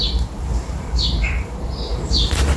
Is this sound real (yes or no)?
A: no